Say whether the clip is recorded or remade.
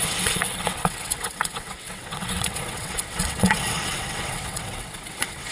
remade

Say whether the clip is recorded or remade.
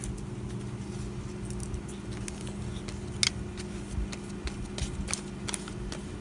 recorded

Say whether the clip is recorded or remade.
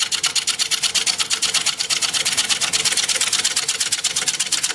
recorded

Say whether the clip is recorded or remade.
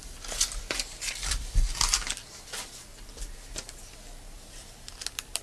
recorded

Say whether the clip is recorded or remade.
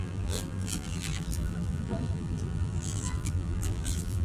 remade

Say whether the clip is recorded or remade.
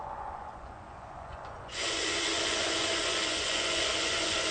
remade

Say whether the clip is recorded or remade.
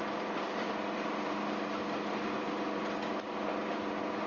recorded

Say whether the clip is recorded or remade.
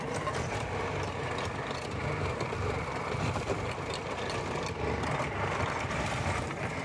recorded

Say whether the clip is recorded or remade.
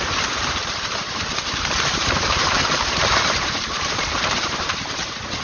remade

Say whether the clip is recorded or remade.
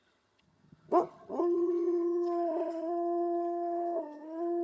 remade